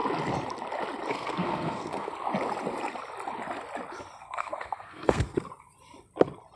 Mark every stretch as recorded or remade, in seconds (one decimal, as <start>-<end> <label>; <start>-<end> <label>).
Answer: 0.0-1.1 recorded; 1.1-2.1 remade; 2.1-4.2 recorded; 4.2-5.5 remade; 5.5-6.6 recorded